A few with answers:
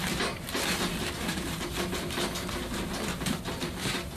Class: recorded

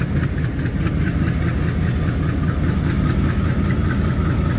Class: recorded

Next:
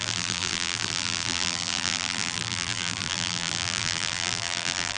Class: remade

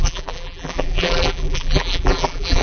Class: remade